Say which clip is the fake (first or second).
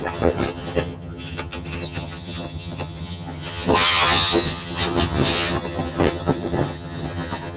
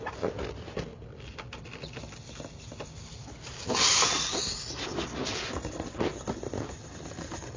first